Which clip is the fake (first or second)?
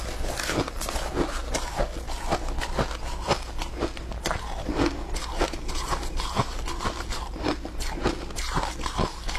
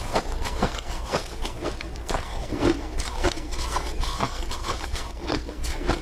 second